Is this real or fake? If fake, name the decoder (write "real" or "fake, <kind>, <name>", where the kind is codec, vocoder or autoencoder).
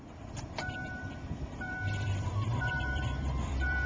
fake, vocoder, BigVGAN v2